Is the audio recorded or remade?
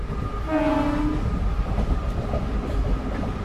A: recorded